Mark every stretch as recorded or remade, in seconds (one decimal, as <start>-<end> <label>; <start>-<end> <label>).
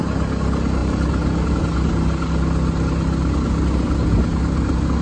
0.0-5.0 recorded